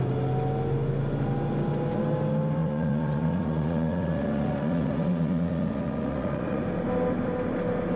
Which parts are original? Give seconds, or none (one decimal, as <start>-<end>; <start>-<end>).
0.0-2.6; 6.6-8.0